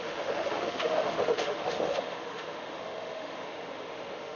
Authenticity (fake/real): fake